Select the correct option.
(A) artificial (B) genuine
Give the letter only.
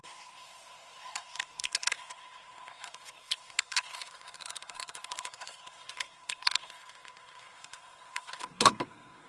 A